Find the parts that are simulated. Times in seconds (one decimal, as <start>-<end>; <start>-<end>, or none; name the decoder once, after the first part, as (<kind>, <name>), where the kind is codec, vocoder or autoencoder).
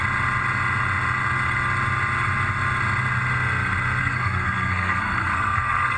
4.0-6.0 (codec, SNAC)